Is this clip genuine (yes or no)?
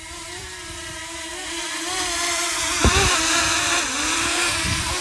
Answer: no